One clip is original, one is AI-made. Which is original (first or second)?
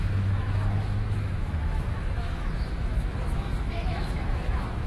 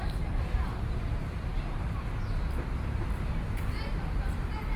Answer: second